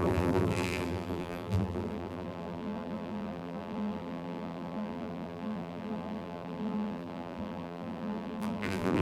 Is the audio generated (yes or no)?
yes